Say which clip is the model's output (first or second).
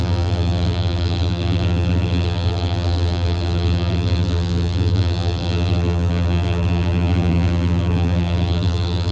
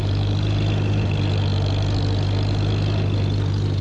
first